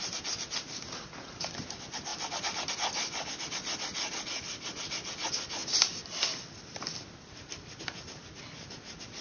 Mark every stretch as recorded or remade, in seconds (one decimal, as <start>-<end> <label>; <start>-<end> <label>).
0.0-9.2 recorded